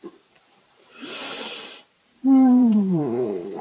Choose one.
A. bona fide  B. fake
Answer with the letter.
B